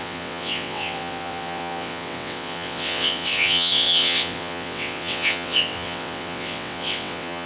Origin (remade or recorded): remade